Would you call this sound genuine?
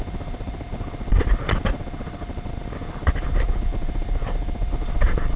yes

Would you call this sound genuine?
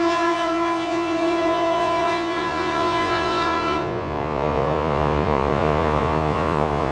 no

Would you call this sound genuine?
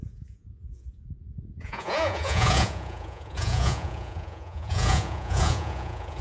no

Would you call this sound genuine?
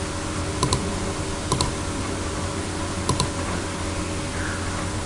yes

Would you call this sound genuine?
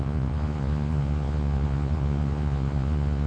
no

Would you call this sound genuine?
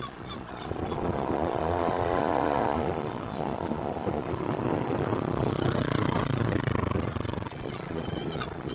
no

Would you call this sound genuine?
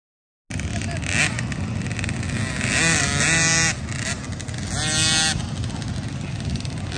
yes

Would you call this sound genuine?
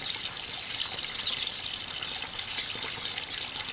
yes